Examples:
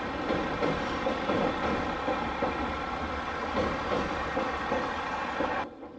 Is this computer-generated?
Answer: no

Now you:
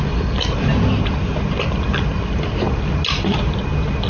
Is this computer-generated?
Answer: no